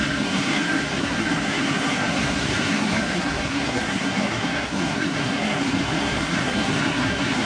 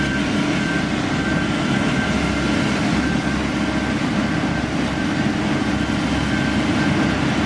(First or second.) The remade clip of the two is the first